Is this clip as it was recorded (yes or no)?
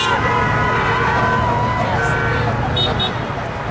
yes